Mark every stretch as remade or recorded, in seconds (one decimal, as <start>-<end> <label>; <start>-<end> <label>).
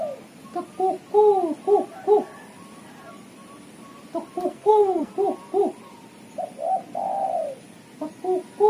0.0-4.5 recorded; 4.5-5.1 remade; 5.1-8.7 recorded